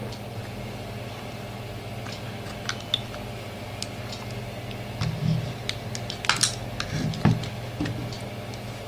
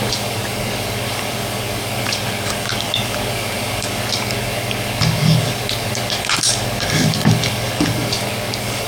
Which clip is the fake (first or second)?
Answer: second